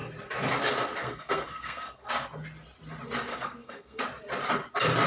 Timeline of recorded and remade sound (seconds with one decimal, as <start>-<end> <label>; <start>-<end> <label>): 0.0-1.0 recorded; 1.0-2.1 remade; 2.1-3.3 recorded; 3.3-4.0 remade; 4.0-5.1 recorded